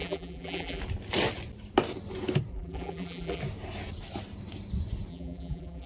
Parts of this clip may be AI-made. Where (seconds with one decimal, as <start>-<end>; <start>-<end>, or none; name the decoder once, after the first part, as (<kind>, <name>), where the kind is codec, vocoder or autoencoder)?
0.0-0.8 (vocoder, BigVGAN v2); 2.5-3.4; 5.1-5.9